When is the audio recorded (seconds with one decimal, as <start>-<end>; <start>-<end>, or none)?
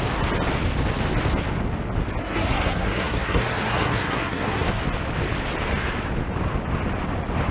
0.0-2.2; 4.8-7.5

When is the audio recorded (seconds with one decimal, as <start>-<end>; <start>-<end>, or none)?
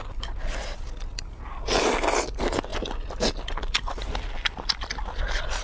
0.0-5.6